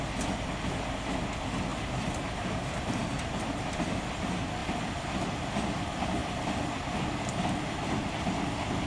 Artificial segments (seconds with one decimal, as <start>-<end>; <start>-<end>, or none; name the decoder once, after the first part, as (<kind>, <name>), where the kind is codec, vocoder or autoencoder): 1.7-4.0 (vocoder, BigVGAN v2); 4.6-5.2; 6.2-8.3

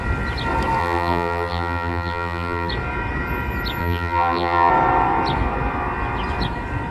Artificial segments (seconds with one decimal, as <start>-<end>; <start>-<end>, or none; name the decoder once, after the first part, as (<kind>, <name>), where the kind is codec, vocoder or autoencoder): 0.8-2.7 (vocoder, BigVGAN v2); 3.8-4.7